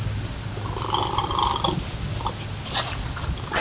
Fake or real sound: real